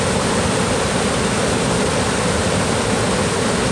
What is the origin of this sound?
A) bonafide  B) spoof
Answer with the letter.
A